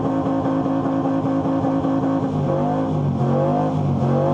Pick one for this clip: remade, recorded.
recorded